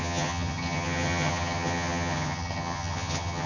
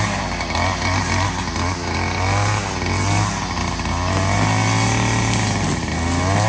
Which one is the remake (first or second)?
first